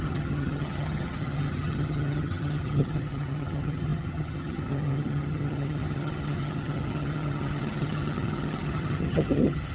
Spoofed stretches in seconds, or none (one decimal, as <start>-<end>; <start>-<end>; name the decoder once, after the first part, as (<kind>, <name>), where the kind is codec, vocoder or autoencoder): 0.0-9.7 (vocoder, HiFi-GAN)

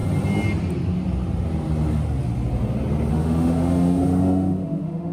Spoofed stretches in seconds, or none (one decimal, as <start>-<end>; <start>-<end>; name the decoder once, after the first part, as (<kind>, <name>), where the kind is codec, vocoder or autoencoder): 3.1-5.1 (autoencoder, DAC-VAE)

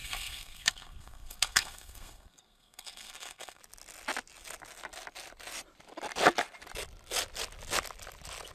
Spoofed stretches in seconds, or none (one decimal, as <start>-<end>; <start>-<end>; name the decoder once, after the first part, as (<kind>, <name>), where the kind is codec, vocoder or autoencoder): 0.0-3.6 (codec, SNAC)

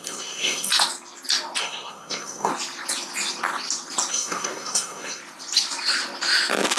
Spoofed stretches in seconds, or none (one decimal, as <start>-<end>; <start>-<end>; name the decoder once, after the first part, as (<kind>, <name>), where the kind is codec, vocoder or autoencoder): 0.0-0.7 (codec, SNAC); 1.6-2.5; 4.1-5.2

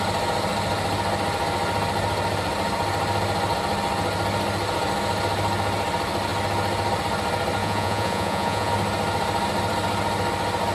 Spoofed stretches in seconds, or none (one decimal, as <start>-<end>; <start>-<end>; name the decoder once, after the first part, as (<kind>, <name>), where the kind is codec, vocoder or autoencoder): 7.6-8.7 (vocoder, Vocos)

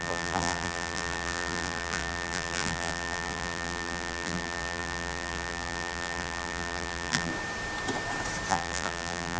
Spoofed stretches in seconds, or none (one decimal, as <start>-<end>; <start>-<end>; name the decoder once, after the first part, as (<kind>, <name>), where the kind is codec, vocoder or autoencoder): 0.0-7.3 (vocoder, BigVGAN v2); 8.5-9.4

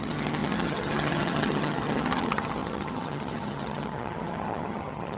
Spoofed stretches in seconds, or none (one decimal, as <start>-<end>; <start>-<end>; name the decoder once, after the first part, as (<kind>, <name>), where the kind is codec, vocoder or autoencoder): 0.0-5.2 (vocoder, HiFi-GAN)